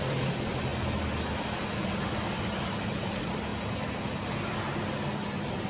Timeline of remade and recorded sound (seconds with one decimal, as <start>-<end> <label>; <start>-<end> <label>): 0.0-5.7 recorded